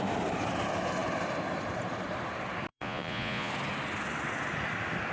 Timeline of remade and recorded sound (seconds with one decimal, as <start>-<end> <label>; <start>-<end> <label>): 0.0-2.7 recorded; 2.7-3.5 remade; 3.5-5.1 recorded